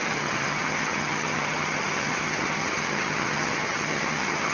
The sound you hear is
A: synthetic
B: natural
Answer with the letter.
A